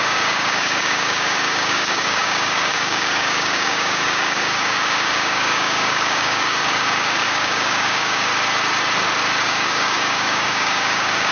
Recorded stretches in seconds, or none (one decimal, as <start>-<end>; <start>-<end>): 8.3-9.4